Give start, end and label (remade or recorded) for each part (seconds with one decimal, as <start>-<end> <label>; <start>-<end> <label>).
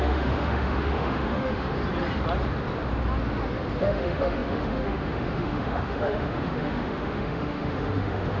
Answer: 0.0-1.7 remade; 1.7-3.8 recorded; 3.8-8.4 remade